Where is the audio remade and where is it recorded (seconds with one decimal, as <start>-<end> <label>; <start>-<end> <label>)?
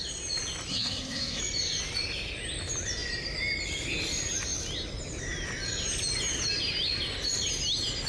0.0-0.7 recorded; 0.7-1.4 remade; 1.4-8.1 recorded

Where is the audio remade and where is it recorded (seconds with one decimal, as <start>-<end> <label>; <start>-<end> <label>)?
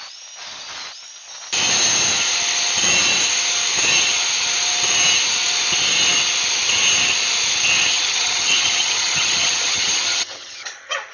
0.0-7.9 recorded; 7.9-11.1 remade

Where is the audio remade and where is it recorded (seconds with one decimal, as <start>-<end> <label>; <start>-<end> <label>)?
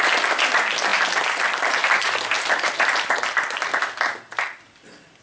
0.0-5.2 recorded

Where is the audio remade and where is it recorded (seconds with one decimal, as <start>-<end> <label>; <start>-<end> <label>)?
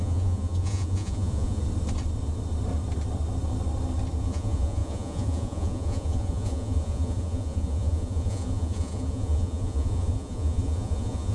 0.0-1.6 remade; 1.6-4.2 recorded; 4.2-11.3 remade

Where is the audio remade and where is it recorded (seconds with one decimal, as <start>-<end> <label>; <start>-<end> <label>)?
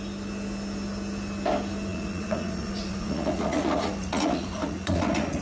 0.0-1.9 recorded; 1.9-5.4 remade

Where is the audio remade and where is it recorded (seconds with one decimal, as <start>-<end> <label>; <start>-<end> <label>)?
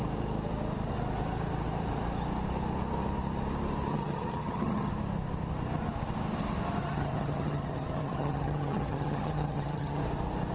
0.0-3.9 recorded; 3.9-4.9 remade; 4.9-6.8 recorded; 6.8-10.0 remade; 10.0-10.5 recorded